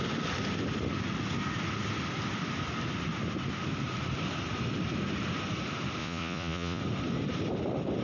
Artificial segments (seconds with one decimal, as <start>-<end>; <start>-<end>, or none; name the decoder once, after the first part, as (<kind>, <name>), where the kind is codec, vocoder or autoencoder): 6.0-6.8 (vocoder, Vocos)